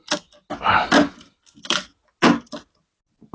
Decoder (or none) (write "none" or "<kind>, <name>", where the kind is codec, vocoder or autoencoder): none